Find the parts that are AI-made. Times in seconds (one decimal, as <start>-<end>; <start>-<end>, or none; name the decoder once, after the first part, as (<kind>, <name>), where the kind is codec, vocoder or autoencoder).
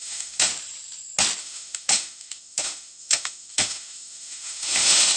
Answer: 0.0-0.5 (autoencoder, DAC-VAE); 1.4-5.2